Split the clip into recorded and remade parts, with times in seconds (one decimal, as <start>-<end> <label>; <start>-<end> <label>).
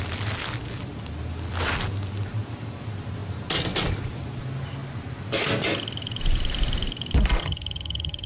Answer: 0.0-7.4 recorded; 7.4-8.3 remade